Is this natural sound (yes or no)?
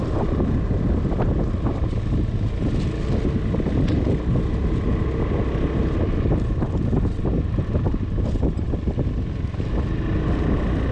yes